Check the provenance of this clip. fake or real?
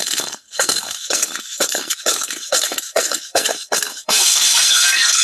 fake